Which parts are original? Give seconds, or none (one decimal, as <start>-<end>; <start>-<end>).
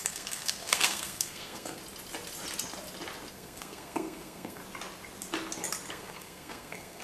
1.8-3.3; 4.6-5.9